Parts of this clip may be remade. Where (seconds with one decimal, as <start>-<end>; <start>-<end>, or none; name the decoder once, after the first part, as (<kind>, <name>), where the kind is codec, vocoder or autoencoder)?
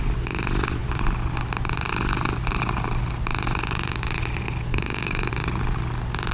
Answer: 4.7-5.3 (codec, DAC)